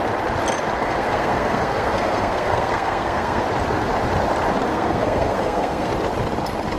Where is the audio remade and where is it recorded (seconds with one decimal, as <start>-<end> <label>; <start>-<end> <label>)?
0.0-0.8 recorded; 0.8-3.4 remade; 3.4-4.7 recorded; 4.7-5.9 remade; 5.9-6.8 recorded